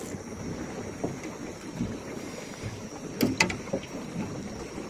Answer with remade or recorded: recorded